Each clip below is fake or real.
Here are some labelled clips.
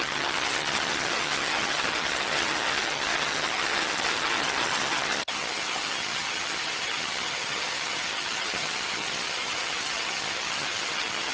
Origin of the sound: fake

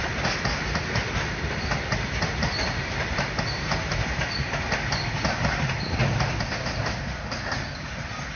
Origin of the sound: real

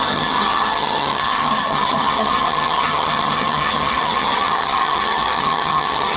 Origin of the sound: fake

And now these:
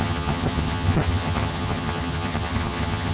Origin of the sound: fake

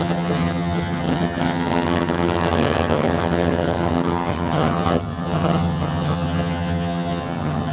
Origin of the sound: fake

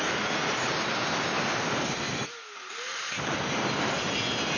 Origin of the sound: real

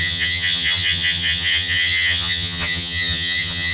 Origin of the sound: fake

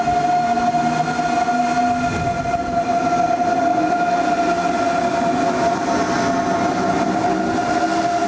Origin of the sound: real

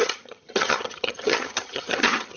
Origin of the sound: fake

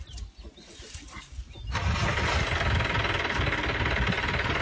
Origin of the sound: real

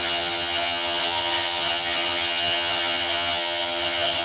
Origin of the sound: fake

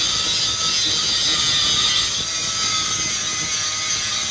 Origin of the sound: real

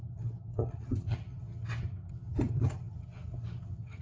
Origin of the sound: fake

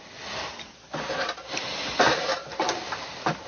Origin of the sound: real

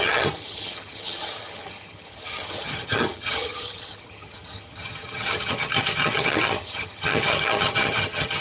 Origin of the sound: fake